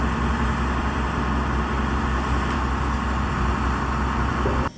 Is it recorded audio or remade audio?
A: remade